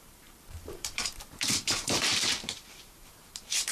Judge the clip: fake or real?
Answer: fake